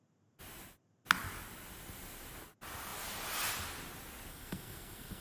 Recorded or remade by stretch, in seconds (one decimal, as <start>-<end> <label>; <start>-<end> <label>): 0.0-4.3 recorded; 4.3-5.2 remade